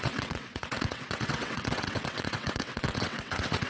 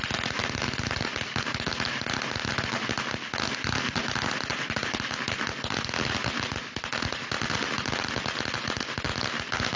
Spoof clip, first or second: first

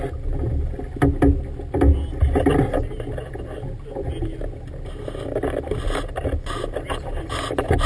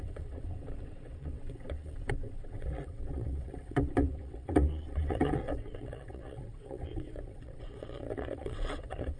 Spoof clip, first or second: second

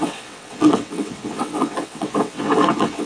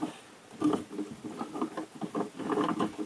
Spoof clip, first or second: first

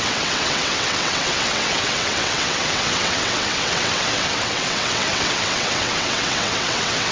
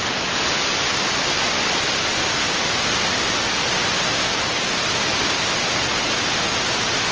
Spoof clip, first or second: first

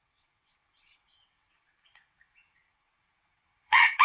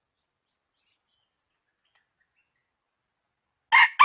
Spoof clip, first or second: first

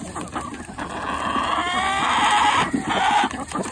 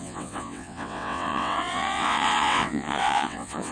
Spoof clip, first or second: second